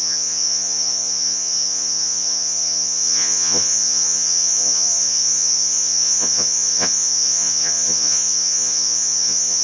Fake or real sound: fake